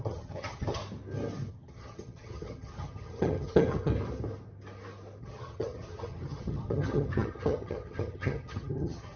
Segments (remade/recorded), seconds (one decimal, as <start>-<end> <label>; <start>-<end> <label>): 0.0-0.8 remade; 0.8-1.5 recorded; 1.5-3.9 remade; 3.9-5.2 recorded; 5.2-9.2 remade